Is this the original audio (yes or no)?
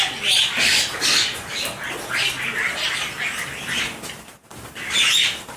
yes